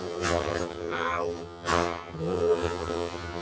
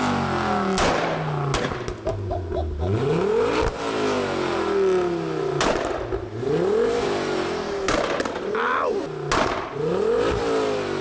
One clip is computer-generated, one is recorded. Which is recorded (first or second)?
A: second